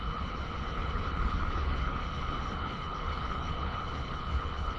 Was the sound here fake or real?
fake